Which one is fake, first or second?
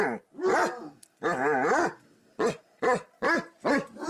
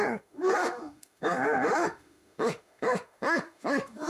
second